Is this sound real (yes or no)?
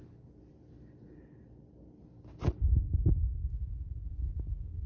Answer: yes